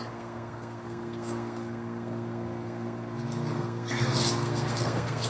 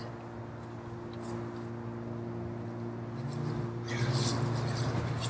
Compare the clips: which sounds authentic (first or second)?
second